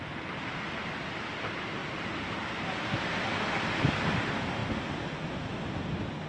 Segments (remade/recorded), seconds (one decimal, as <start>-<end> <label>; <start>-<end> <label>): 0.0-6.3 recorded